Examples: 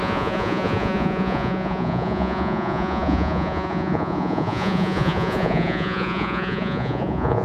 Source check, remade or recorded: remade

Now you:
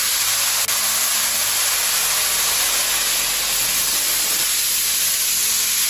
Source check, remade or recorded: recorded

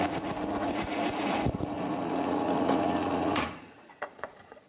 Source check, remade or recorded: remade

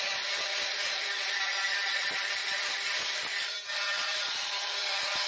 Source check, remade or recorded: recorded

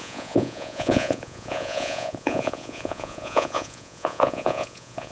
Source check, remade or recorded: remade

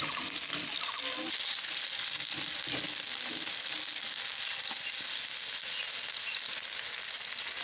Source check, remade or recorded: recorded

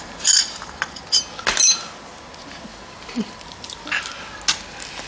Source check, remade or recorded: recorded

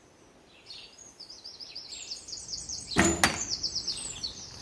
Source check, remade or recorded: recorded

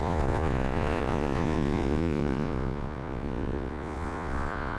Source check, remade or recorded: remade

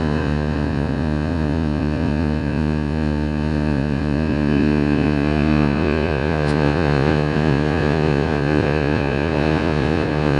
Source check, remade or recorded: remade